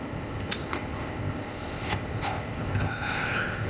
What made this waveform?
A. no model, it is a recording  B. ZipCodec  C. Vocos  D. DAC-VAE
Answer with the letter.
B